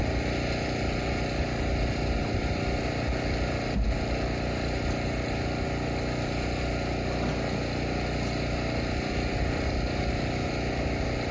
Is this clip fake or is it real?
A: real